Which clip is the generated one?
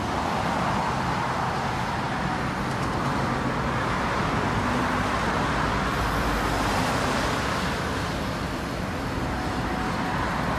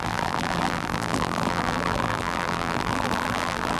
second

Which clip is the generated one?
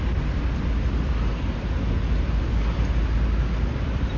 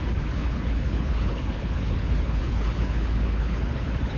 second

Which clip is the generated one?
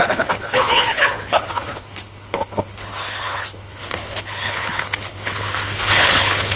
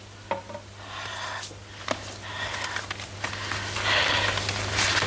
first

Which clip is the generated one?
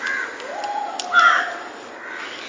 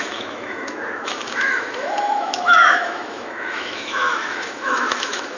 second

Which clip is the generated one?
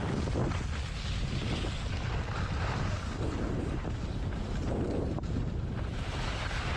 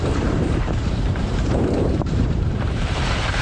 second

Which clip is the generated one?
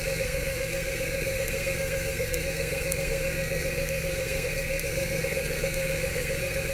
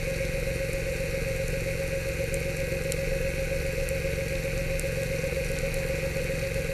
first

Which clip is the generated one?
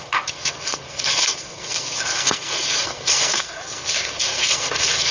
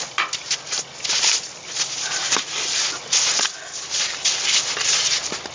first